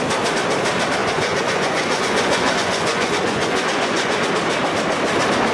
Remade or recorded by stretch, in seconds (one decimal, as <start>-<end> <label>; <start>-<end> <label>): 0.0-1.0 recorded; 1.0-4.3 remade; 4.3-5.5 recorded